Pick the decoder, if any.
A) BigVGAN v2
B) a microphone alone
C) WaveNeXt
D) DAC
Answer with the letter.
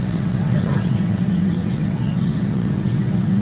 C